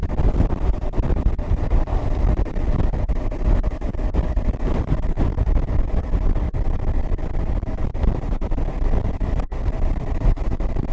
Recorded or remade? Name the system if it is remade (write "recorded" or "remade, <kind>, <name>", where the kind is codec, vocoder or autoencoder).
recorded